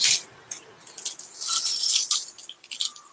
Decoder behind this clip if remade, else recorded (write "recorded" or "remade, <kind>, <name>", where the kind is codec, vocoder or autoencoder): recorded